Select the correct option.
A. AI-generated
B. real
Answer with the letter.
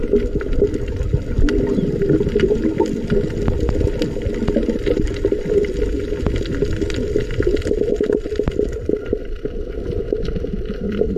B